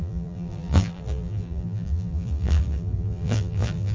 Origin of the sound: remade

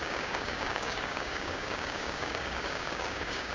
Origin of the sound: remade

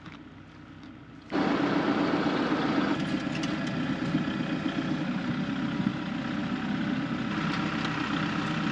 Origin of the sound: recorded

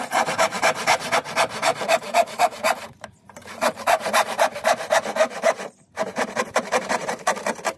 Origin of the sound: remade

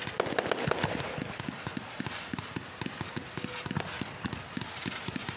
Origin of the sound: recorded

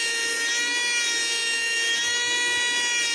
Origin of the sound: recorded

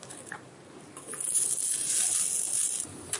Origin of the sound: recorded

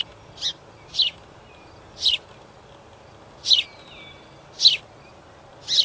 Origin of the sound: recorded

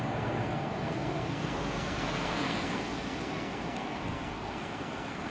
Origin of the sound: remade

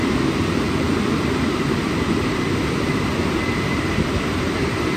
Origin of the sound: remade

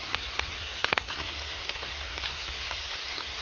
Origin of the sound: remade